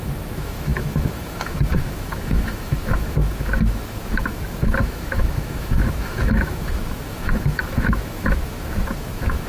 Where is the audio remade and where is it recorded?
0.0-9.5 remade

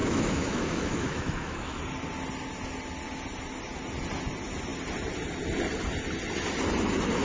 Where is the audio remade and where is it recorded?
0.0-1.8 remade; 1.8-7.2 recorded

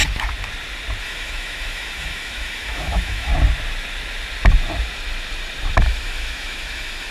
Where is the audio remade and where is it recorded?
0.0-1.0 recorded; 1.0-3.3 remade; 3.3-5.8 recorded; 5.8-7.1 remade